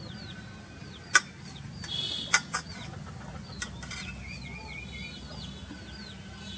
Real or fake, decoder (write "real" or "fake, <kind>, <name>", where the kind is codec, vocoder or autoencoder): real